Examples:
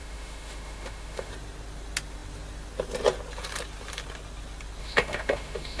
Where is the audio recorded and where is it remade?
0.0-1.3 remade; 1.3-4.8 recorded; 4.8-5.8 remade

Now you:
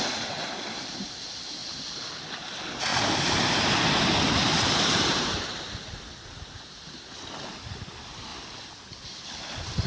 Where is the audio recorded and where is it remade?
0.0-2.9 recorded; 2.9-5.4 remade; 5.4-9.9 recorded